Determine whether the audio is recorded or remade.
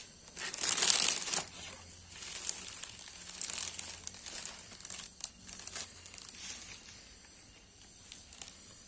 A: recorded